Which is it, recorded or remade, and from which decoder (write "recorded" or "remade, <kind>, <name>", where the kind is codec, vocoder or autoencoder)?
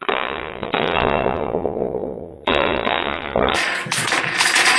remade, vocoder, Vocos